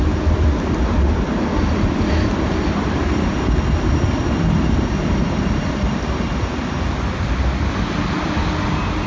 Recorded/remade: recorded